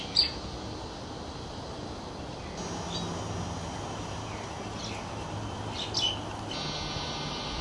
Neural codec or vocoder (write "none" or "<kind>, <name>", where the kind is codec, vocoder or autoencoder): none